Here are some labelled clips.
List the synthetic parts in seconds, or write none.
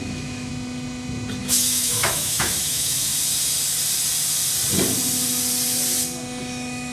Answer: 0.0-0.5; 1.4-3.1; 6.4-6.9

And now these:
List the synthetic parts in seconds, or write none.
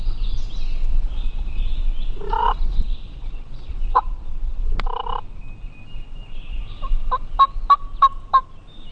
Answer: 0.9-1.8; 2.4-4.7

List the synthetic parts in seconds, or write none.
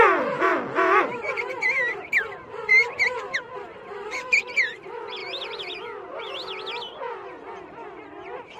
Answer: none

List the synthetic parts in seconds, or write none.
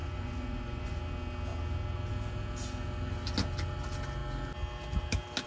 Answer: 0.0-1.0